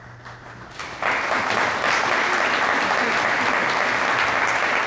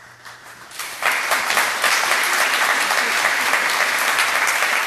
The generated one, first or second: second